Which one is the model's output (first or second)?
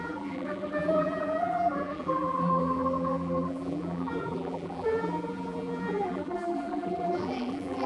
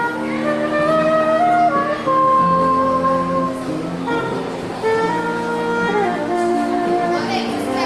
first